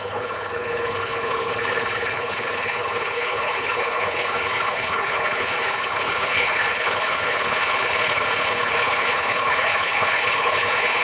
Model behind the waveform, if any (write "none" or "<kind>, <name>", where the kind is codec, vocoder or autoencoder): codec, HILCodec